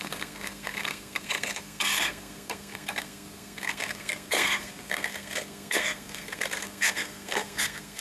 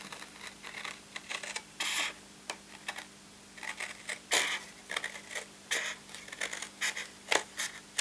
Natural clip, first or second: second